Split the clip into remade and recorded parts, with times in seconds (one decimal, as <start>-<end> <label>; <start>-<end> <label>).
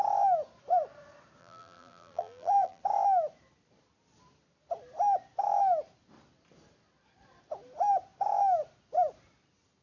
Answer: 0.0-1.4 recorded; 1.4-2.8 remade; 2.8-9.8 recorded